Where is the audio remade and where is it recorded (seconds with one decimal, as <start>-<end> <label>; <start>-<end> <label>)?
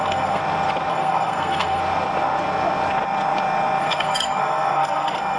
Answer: 0.0-0.4 remade; 0.4-0.9 recorded; 0.9-1.8 remade; 1.8-3.8 recorded; 3.8-5.4 remade